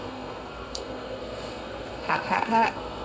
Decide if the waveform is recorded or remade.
remade